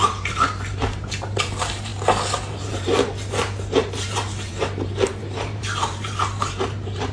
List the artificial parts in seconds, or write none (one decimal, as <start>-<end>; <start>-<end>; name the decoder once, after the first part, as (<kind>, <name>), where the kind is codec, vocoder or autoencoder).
0.0-1.9 (vocoder, BigVGAN v2); 2.5-7.1